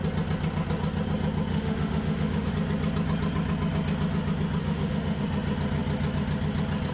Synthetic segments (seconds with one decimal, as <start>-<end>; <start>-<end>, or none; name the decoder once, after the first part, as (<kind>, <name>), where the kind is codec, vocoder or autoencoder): 1.5-2.5 (autoencoder, DAC-VAE); 4.6-5.2